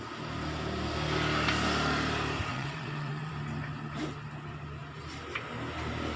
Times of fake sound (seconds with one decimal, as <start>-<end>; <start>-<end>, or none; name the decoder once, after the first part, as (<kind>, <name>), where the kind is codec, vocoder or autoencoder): 2.5-3.3 (vocoder, WaveNeXt)